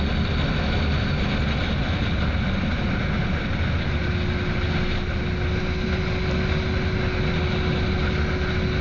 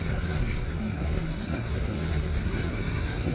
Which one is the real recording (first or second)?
first